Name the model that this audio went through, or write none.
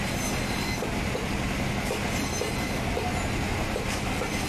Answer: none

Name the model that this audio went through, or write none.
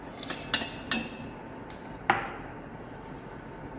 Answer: none